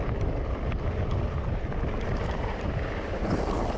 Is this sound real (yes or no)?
yes